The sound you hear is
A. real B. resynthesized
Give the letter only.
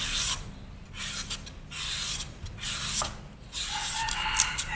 A